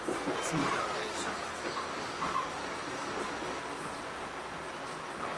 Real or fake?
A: real